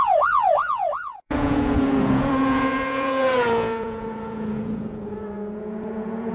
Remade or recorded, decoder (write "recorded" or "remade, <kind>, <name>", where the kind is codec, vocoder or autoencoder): remade, vocoder, Vocos